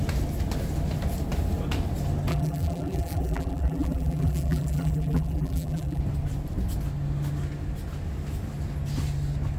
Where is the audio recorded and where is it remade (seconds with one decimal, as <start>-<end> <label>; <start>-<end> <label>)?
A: 0.0-2.3 recorded; 2.3-6.0 remade; 6.0-9.6 recorded